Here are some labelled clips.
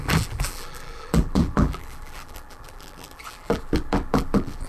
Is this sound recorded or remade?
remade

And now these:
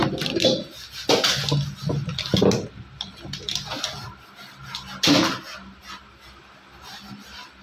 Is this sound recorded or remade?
recorded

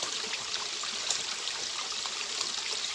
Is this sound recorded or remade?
remade